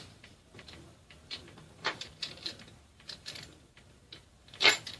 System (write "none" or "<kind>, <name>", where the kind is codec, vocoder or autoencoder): vocoder, BigVGAN v2